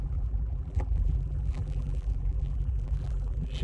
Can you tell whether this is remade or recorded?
remade